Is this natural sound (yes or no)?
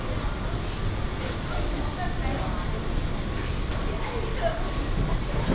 yes